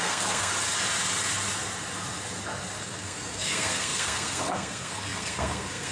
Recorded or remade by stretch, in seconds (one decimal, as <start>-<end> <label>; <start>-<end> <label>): 0.0-0.5 remade; 0.5-2.8 recorded; 2.8-5.9 remade